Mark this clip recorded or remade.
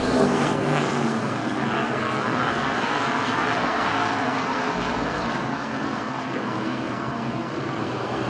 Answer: remade